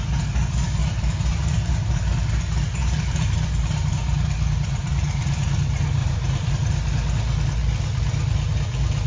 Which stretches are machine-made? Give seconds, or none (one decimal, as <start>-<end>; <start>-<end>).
0.8-1.7; 2.8-5.4; 6.0-6.5